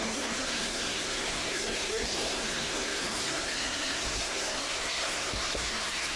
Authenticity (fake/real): fake